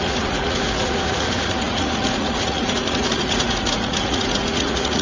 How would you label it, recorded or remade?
remade